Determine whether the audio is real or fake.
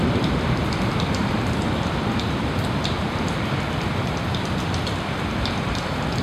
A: fake